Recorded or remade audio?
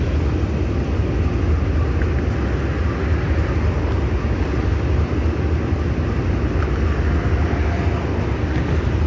recorded